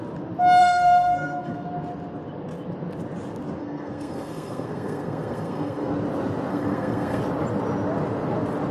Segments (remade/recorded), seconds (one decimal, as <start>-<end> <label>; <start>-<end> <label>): 0.0-0.6 recorded; 0.6-1.5 remade; 1.5-3.6 recorded; 3.6-5.9 remade; 5.9-6.5 recorded; 6.5-7.2 remade; 7.2-8.7 recorded